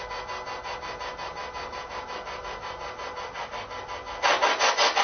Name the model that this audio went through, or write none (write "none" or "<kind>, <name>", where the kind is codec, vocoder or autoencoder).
none